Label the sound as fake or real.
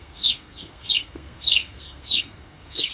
fake